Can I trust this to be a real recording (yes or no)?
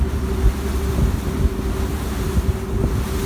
yes